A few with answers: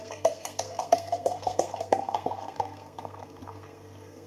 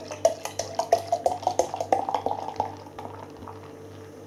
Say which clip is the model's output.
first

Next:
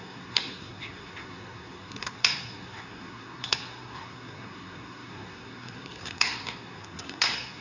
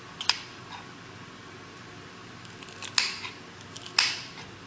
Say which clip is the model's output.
first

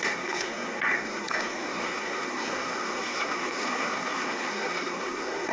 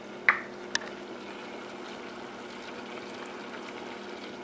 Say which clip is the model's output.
first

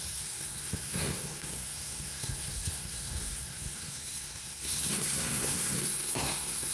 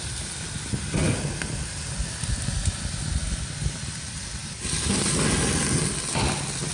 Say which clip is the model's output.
first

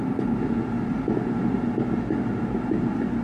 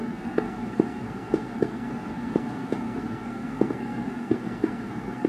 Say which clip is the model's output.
second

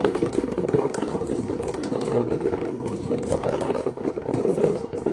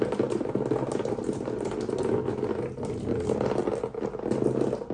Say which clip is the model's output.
first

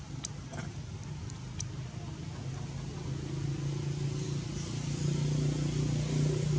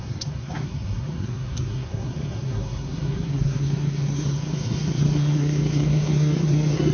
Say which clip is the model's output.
second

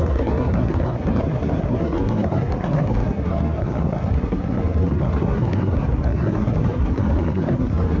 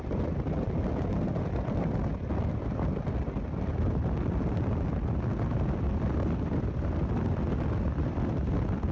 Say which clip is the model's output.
first